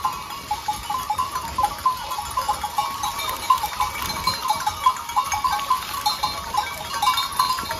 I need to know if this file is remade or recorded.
remade